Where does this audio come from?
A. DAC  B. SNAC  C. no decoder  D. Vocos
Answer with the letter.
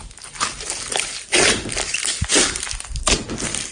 C